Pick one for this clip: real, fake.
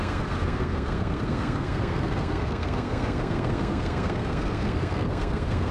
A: fake